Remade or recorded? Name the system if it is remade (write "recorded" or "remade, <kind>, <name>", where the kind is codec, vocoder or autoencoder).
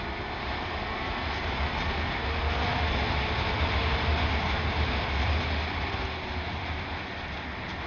recorded